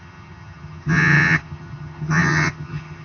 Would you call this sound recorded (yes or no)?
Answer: no